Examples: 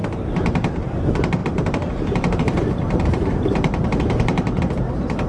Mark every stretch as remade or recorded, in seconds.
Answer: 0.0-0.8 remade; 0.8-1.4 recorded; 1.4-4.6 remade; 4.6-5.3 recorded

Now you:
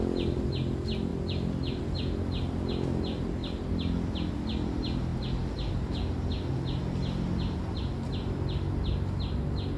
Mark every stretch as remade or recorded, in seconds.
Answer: 0.0-1.1 recorded; 1.1-1.8 remade; 1.8-3.4 recorded; 3.4-4.3 remade; 4.3-9.8 recorded

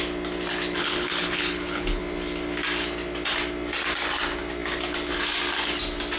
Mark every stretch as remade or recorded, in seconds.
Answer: 0.0-0.8 recorded; 0.8-2.0 remade; 2.0-6.2 recorded

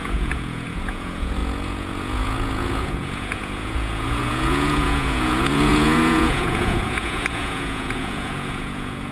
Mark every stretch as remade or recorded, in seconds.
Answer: 0.0-9.1 remade

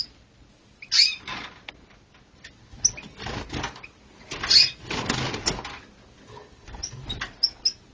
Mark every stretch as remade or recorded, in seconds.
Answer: 0.0-6.8 recorded; 6.8-7.4 remade; 7.4-7.9 recorded